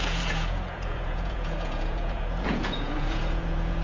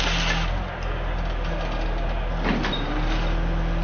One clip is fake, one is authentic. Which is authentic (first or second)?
second